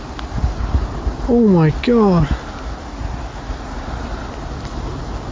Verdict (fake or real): real